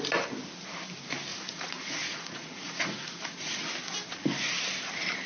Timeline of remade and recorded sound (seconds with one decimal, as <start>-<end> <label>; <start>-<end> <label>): 0.0-1.3 recorded; 1.3-3.7 remade; 3.7-5.3 recorded